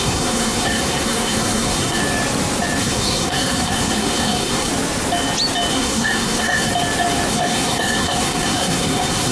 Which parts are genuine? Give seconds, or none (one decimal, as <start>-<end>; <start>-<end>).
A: 2.0-2.8; 4.7-5.7; 6.7-7.3